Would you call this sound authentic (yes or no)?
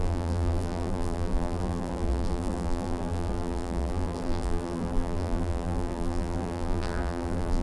no